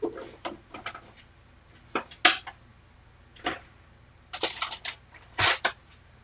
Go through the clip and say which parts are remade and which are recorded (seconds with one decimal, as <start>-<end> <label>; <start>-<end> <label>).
0.0-6.2 recorded